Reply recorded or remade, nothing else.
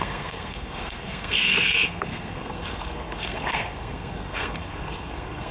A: remade